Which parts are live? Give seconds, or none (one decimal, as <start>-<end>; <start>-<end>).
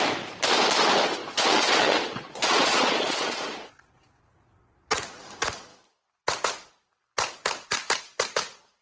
0.0-1.2; 4.2-8.8